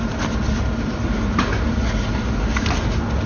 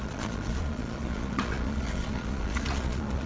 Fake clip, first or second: second